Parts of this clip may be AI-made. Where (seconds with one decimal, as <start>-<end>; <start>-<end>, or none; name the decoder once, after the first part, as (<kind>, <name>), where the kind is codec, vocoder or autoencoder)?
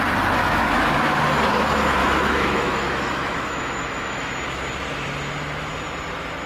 0.4-1.2 (autoencoder, DAC-VAE); 2.0-4.3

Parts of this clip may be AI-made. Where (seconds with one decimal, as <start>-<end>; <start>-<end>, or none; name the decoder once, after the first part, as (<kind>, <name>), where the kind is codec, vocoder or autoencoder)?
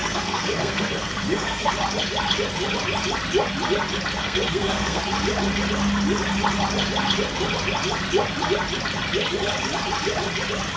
0.0-1.7 (codec, SNAC); 4.2-5.0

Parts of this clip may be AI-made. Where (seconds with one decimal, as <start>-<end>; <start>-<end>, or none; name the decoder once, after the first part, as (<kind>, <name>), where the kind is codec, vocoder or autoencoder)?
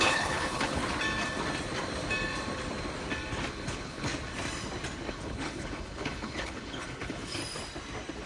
0.0-0.8 (codec, HILCodec); 3.5-4.1; 5.1-7.4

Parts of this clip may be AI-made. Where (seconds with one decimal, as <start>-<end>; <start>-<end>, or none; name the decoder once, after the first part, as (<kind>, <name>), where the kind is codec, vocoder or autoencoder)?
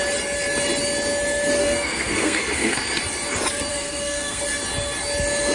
1.6-2.8 (codec, SNAC); 3.7-4.4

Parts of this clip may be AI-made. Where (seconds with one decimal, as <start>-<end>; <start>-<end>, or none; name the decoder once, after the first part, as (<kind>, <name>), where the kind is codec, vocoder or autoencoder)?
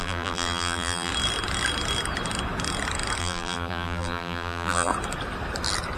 0.0-1.1 (vocoder, BigVGAN v2); 3.2-4.9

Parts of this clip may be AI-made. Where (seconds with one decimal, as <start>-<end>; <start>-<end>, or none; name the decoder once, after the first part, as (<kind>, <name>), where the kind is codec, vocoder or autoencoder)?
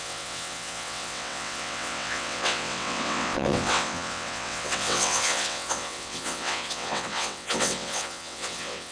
0.0-8.9 (vocoder, WaveNeXt)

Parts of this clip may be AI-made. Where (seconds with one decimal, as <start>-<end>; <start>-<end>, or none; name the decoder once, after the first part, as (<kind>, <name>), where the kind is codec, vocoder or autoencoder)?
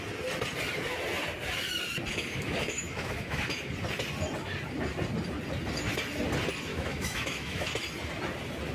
2.1-3.7 (autoencoder, DAC-VAE); 6.7-7.7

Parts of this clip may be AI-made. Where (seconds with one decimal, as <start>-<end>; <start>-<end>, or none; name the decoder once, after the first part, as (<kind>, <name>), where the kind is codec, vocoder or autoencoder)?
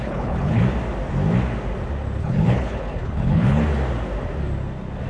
0.0-0.6 (codec, HILCodec); 2.2-3.6